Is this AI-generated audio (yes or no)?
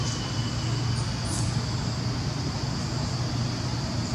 no